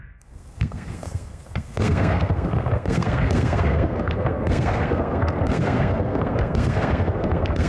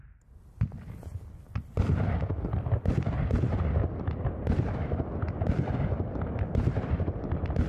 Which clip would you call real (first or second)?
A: second